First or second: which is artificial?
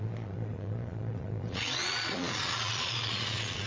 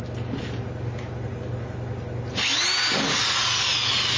first